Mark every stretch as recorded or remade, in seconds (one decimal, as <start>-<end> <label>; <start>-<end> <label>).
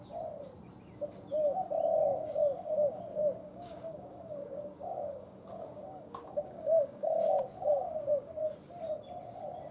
0.0-1.9 recorded; 1.9-3.0 remade; 3.0-3.4 recorded; 3.4-8.3 remade; 8.3-9.7 recorded